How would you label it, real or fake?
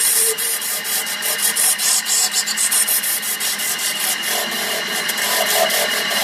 fake